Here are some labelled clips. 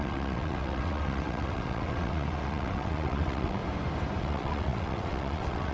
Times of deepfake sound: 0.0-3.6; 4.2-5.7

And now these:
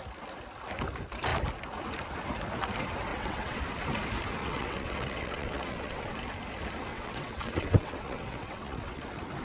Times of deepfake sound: 3.1-3.6; 4.4-6.1; 6.9-9.0

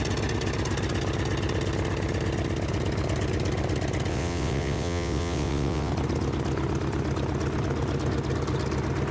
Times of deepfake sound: 4.1-5.9

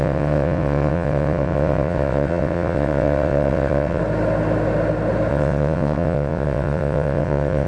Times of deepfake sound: 0.0-4.0; 5.3-7.7

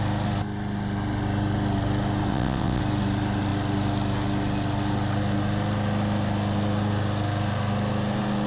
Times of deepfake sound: 2.3-2.8

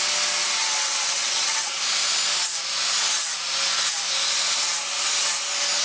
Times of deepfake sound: 0.6-1.8

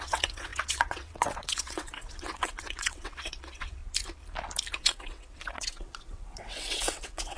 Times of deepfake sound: 0.0-3.8; 4.8-7.4

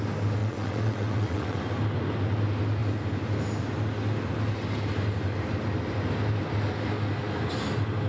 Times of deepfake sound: 0.4-1.6